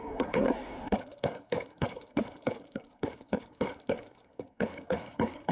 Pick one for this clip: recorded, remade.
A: remade